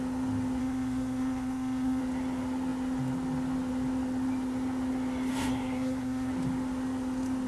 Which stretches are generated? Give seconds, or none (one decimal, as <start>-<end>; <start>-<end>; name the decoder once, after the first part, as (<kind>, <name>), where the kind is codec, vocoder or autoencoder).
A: 0.6-2.0 (codec, SNAC); 5.3-6.3